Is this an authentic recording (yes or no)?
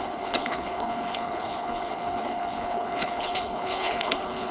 no